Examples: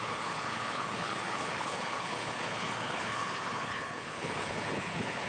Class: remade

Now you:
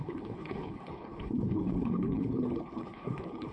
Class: remade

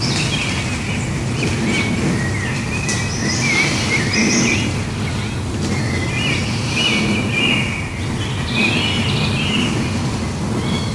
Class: recorded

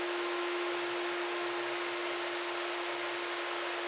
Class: recorded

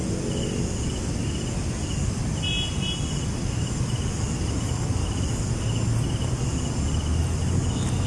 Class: recorded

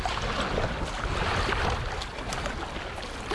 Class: recorded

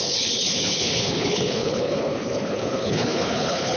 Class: remade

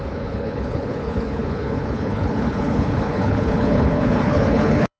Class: remade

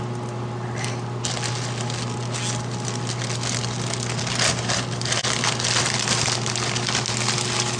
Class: recorded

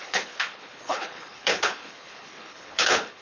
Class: remade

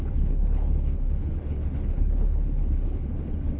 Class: remade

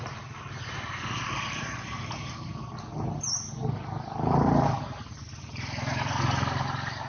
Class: recorded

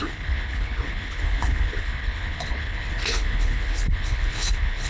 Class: remade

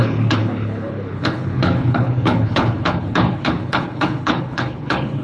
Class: remade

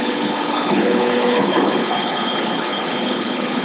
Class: remade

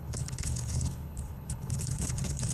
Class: remade